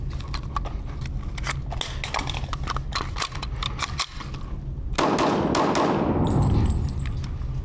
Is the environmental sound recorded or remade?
recorded